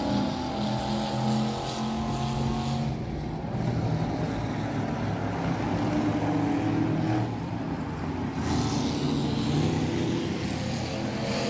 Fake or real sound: real